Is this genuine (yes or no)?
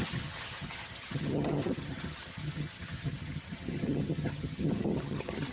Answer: no